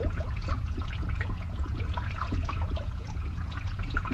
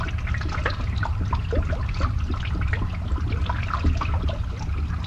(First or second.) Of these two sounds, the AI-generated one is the first